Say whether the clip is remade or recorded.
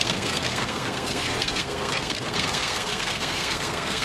remade